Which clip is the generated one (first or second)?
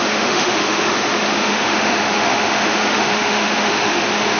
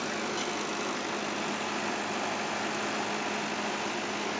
first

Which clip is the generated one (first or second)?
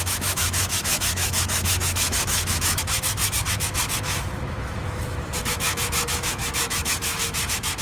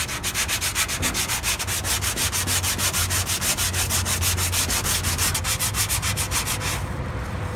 first